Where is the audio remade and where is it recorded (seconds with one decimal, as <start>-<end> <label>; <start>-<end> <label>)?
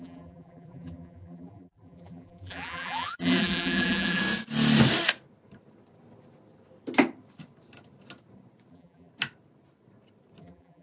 0.0-4.2 remade; 4.2-8.7 recorded; 8.7-9.1 remade; 9.1-10.4 recorded; 10.4-10.8 remade